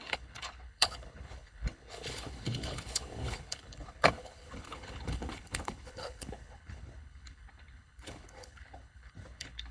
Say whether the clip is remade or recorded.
remade